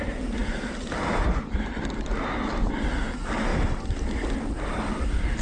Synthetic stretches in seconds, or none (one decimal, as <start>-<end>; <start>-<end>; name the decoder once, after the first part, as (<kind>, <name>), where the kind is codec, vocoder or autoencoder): none